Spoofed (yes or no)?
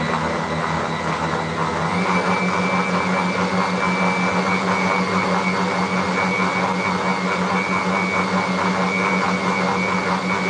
no